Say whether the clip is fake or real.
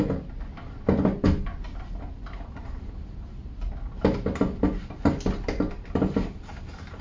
real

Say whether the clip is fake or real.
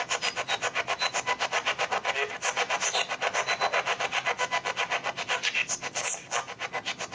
real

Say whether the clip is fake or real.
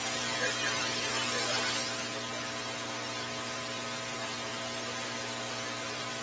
real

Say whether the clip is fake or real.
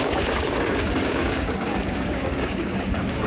fake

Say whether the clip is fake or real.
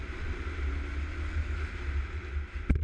real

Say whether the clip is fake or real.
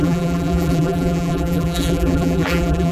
fake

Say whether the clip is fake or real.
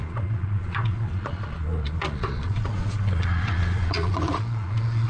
fake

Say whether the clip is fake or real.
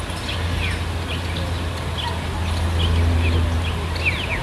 real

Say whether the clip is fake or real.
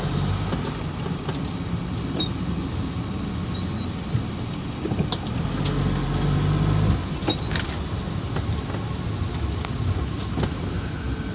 real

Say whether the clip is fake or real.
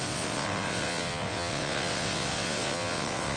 fake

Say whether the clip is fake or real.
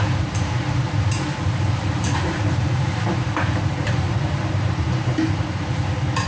fake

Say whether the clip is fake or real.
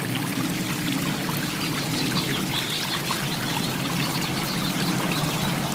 real